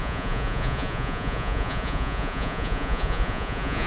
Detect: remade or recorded remade